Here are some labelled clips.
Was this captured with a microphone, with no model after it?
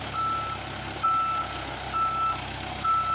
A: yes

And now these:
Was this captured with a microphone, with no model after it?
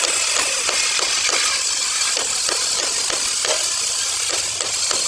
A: yes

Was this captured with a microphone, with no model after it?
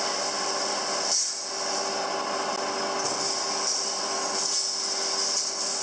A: yes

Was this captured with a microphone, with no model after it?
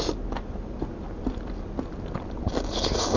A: yes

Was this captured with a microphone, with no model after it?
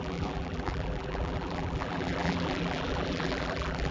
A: no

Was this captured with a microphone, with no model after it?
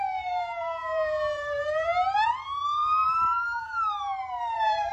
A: no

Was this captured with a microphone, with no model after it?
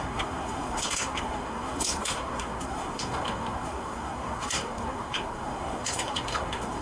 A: no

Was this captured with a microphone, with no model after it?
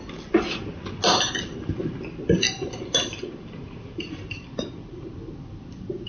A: yes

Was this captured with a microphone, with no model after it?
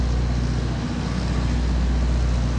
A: yes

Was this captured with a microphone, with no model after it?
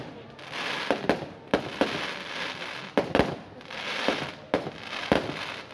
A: yes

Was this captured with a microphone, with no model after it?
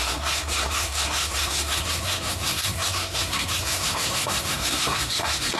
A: no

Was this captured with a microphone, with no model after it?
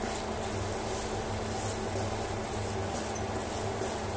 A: yes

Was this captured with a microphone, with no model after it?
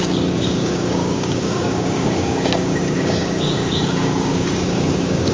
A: no